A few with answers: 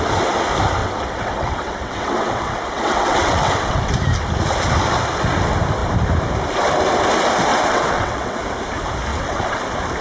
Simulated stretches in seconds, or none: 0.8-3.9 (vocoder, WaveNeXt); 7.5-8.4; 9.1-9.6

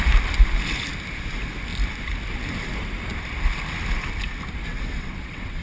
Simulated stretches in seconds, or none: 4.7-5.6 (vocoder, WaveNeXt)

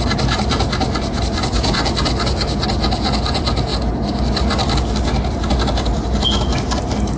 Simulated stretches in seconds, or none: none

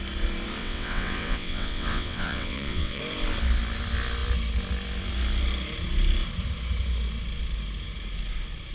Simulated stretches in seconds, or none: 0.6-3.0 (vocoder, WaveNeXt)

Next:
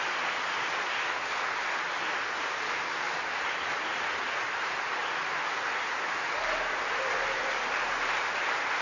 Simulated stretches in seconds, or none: none